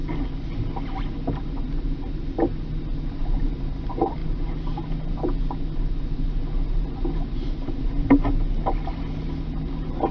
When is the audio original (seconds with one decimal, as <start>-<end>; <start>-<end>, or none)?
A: 0.0-10.1